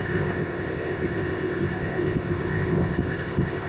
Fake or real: fake